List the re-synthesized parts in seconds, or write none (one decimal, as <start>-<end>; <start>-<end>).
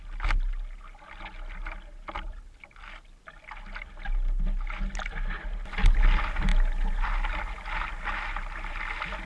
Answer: none